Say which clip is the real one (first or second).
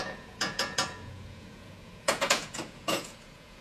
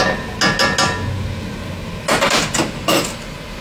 second